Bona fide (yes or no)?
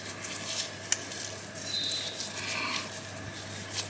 yes